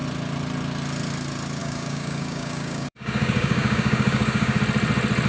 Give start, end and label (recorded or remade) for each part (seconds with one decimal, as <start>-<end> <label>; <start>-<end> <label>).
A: 0.0-1.6 recorded; 1.6-4.6 remade; 4.6-5.3 recorded